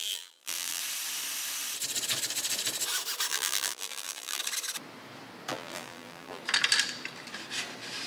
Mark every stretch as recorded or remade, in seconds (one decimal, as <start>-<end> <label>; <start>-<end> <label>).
0.0-0.8 remade; 0.8-3.3 recorded; 3.3-4.4 remade; 4.4-5.5 recorded; 5.5-6.4 remade; 6.4-8.1 recorded